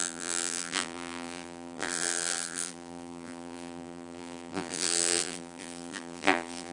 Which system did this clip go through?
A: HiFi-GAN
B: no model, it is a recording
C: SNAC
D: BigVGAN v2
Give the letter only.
D